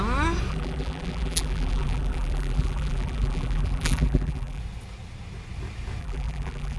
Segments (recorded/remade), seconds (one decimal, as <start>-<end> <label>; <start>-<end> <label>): 0.0-0.5 recorded; 0.5-4.6 remade; 4.6-6.0 recorded; 6.0-6.8 remade